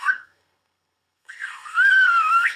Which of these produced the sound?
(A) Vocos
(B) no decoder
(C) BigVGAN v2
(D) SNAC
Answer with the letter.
D